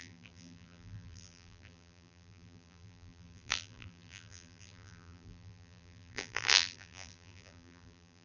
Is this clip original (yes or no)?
no